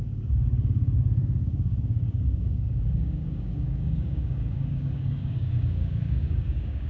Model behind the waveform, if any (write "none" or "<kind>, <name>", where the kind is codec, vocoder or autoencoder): codec, DAC